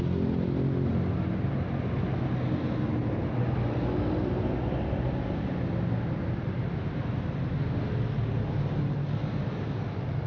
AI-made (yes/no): no